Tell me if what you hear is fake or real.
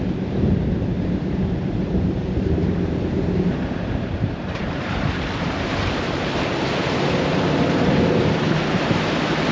fake